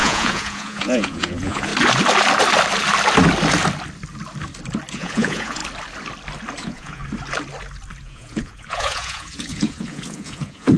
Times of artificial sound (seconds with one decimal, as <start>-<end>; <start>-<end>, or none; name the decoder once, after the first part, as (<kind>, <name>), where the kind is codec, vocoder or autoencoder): 0.0-1.7 (vocoder, Vocos); 4.9-5.6; 6.6-7.0; 8.0-10.8